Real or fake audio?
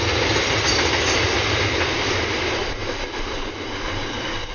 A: real